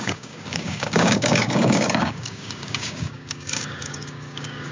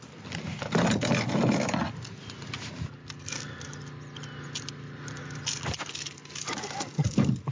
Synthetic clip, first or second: first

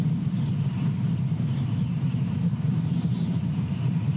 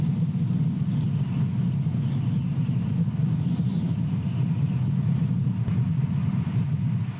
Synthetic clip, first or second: first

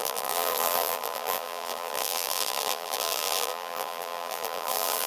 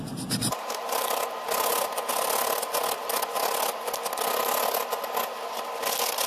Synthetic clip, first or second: first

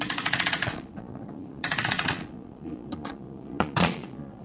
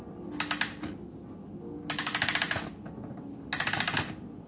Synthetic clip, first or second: first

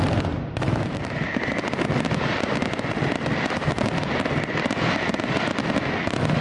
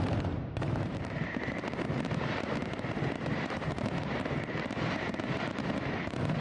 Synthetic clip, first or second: second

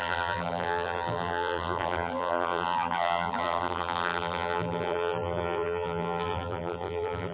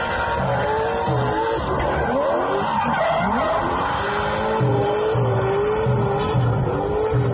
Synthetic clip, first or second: first